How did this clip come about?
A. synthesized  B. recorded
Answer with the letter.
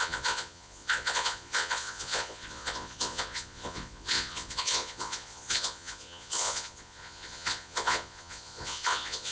A